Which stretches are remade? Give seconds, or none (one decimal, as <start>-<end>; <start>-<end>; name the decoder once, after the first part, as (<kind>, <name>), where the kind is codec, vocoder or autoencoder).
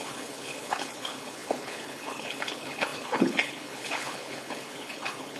0.0-5.4 (codec, HILCodec)